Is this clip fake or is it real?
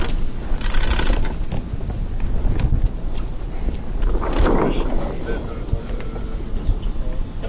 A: real